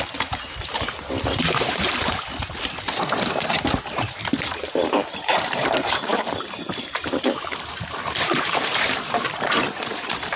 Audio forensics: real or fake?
fake